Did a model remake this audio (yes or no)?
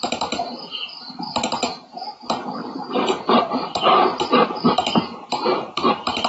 yes